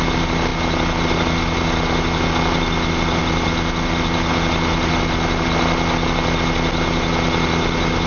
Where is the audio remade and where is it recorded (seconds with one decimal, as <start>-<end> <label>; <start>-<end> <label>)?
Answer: 0.0-8.1 recorded